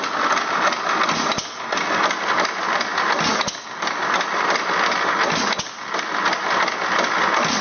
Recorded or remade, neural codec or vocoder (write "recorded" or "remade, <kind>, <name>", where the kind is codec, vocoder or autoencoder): recorded